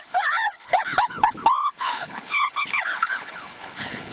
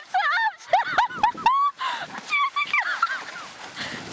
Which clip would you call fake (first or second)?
first